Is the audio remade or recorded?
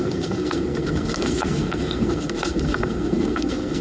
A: remade